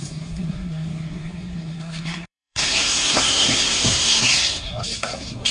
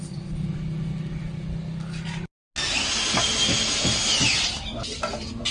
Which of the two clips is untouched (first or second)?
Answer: second